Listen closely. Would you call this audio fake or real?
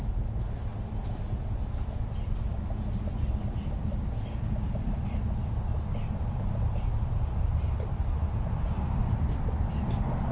real